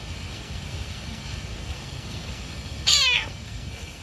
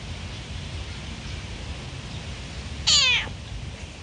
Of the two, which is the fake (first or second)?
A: first